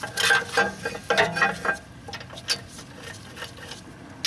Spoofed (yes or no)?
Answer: no